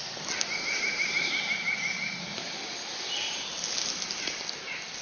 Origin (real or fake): real